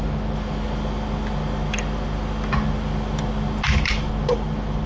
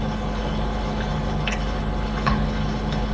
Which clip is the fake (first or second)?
second